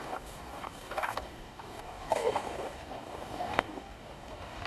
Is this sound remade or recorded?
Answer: remade